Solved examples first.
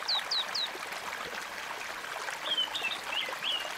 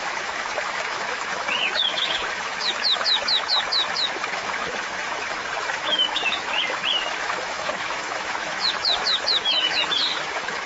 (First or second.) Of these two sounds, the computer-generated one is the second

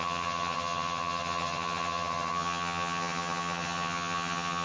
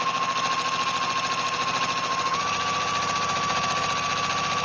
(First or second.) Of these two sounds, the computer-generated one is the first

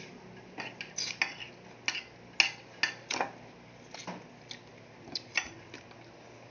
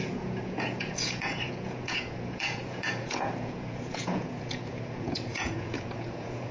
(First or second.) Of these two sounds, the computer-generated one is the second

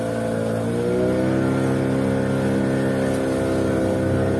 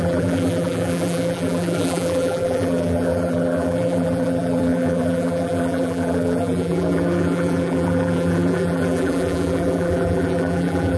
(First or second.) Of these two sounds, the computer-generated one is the second